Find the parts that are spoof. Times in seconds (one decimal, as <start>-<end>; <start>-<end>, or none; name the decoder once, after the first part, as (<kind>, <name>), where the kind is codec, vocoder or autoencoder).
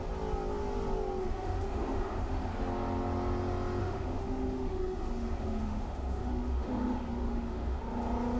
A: 1.2-2.5 (autoencoder, DAC-VAE); 3.8-7.8